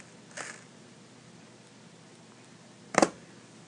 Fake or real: real